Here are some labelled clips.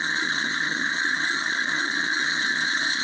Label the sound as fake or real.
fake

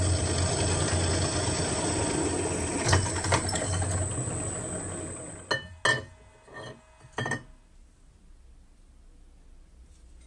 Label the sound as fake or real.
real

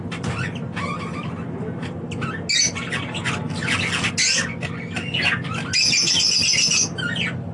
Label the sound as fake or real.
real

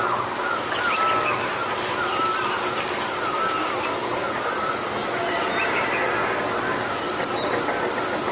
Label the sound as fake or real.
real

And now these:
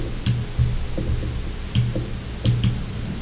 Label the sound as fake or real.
real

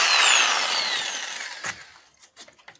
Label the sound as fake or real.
real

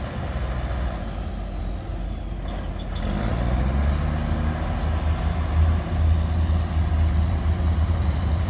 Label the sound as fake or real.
real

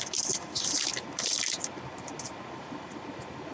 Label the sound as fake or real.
real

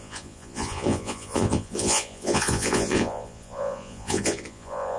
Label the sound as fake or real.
fake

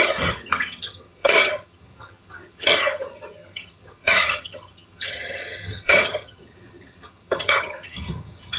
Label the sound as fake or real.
fake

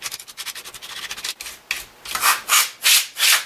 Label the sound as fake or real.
real